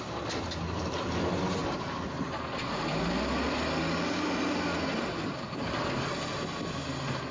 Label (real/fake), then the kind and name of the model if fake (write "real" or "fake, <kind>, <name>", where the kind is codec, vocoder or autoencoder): real